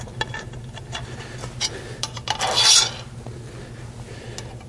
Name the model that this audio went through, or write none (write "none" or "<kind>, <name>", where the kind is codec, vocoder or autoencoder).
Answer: none